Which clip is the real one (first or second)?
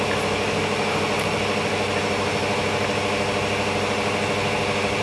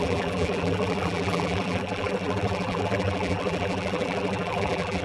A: first